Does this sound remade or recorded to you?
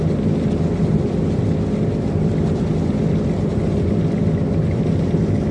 recorded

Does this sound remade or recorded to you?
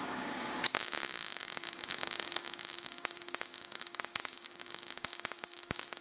remade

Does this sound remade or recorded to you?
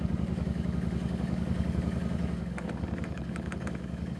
remade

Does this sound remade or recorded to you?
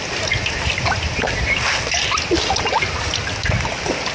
recorded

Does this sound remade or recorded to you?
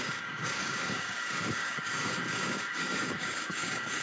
remade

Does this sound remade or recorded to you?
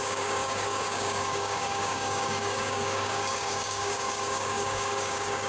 remade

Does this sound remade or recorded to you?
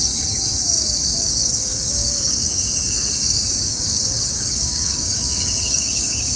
remade